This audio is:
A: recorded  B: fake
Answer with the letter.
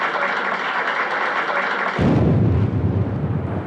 A